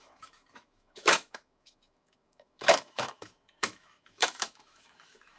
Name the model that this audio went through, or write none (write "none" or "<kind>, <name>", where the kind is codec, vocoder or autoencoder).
autoencoder, DAC-VAE